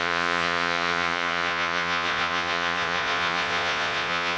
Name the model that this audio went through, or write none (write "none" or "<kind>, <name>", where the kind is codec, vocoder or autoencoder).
vocoder, Vocos